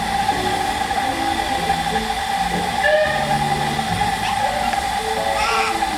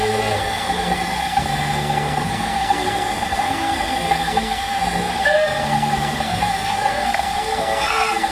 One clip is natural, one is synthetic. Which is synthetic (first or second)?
second